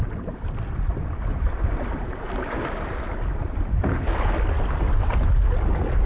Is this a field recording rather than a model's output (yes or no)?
yes